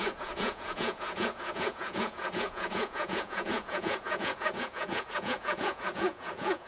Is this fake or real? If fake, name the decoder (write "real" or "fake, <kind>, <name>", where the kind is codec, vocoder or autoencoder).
fake, vocoder, Vocos